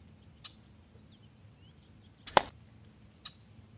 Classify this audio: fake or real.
real